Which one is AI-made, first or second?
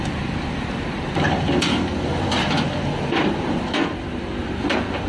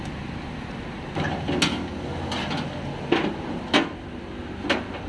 first